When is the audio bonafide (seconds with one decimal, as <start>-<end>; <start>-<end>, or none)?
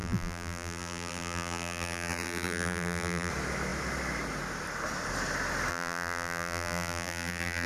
3.3-5.7